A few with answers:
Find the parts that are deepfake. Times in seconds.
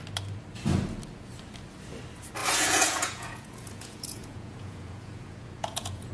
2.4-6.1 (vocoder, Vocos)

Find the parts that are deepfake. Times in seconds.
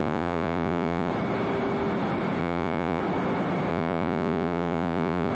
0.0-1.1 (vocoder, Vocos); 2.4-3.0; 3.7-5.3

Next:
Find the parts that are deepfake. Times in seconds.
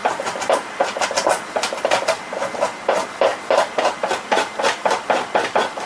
0.0-0.8 (vocoder, BigVGAN v2); 3.3-4.6